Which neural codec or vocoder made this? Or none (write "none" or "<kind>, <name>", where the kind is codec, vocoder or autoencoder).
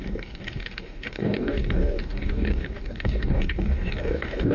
codec, DAC